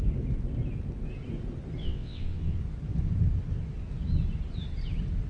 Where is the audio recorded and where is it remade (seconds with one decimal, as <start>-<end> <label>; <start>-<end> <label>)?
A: 0.0-1.8 recorded; 1.8-2.6 remade; 2.6-5.3 recorded